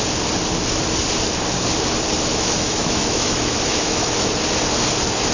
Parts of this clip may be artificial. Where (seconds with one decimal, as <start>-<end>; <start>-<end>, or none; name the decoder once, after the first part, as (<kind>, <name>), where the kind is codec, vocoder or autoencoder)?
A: 2.3-4.3 (autoencoder, DAC-VAE)